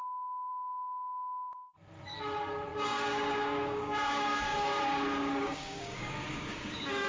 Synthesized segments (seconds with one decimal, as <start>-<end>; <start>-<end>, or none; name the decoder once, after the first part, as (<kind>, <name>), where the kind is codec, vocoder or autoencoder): 2.7-7.1 (codec, DAC)